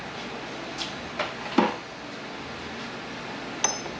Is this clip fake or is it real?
real